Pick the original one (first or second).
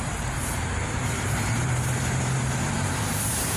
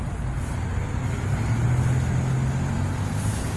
second